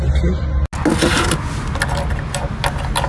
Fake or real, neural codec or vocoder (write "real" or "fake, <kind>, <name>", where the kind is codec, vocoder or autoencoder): real